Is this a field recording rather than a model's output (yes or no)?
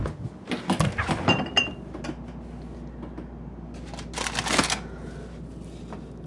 yes